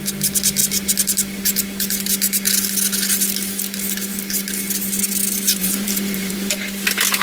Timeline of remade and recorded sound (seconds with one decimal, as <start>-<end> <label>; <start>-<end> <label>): 0.0-5.6 recorded; 5.6-6.5 remade; 6.5-7.2 recorded